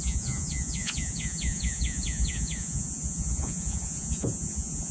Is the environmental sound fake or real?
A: fake